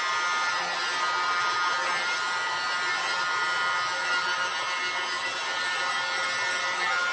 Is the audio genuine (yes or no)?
yes